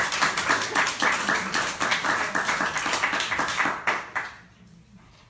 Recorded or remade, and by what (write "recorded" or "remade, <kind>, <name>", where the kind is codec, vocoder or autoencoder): recorded